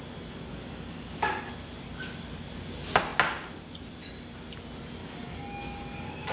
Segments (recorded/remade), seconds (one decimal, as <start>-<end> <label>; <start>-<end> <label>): 0.0-0.5 recorded; 0.5-1.5 remade; 1.5-5.0 recorded; 5.0-6.3 remade